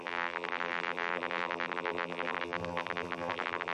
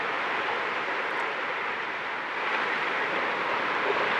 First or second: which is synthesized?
first